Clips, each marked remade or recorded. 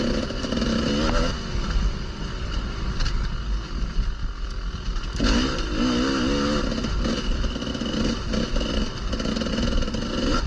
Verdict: recorded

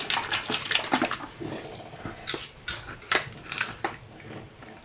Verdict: recorded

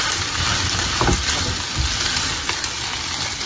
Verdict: recorded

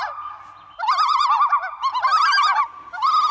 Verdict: recorded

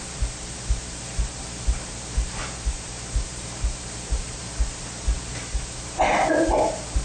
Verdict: remade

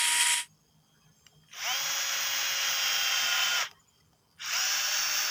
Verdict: recorded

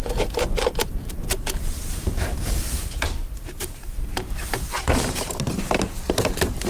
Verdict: remade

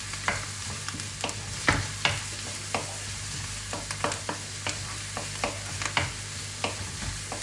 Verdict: recorded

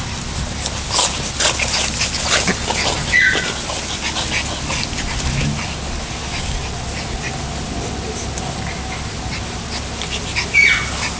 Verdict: recorded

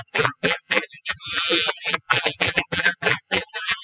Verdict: remade